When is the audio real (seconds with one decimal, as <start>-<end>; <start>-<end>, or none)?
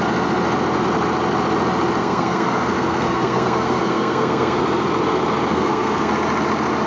0.0-2.0; 4.6-5.5; 6.1-6.9